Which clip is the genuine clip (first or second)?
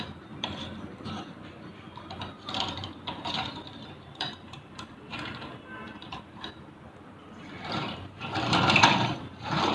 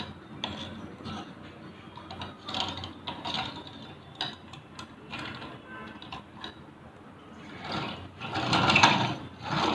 second